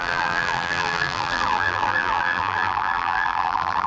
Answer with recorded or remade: remade